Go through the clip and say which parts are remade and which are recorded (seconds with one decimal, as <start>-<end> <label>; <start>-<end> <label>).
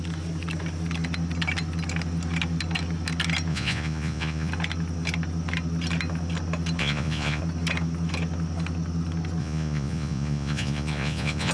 0.0-3.5 recorded; 3.5-4.5 remade; 4.5-6.8 recorded; 6.8-7.4 remade; 7.4-9.4 recorded; 9.4-11.5 remade